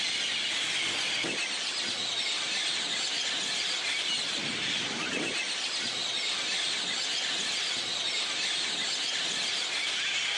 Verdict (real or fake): real